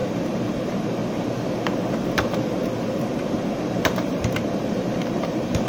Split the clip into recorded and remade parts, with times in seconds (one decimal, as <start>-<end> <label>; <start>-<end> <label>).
0.0-1.0 remade; 1.0-3.1 recorded; 3.1-5.7 remade